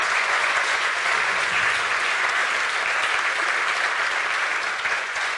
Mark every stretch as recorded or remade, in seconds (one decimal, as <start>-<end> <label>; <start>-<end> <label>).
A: 0.0-2.4 remade; 2.4-4.7 recorded; 4.7-5.4 remade